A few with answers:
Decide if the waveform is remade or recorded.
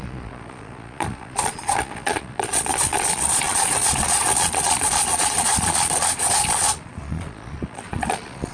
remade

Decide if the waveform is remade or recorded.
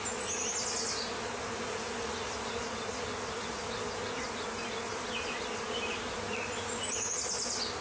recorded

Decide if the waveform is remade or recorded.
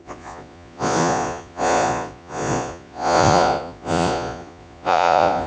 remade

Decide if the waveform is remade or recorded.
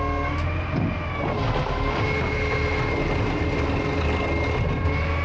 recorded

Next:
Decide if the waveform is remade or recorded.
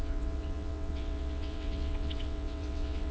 remade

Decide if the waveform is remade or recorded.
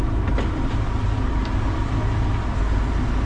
recorded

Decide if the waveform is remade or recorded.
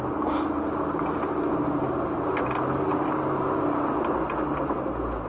recorded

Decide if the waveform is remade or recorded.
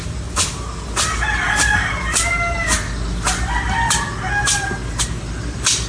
recorded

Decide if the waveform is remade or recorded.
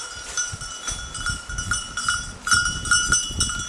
recorded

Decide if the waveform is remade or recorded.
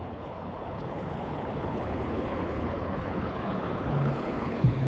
remade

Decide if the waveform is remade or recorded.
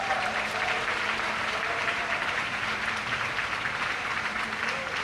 remade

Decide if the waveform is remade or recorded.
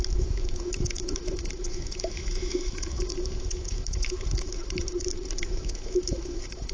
remade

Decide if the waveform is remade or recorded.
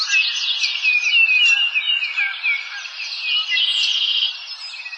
recorded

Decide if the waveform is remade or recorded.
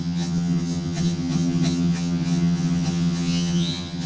remade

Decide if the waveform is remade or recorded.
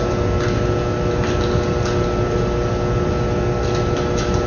recorded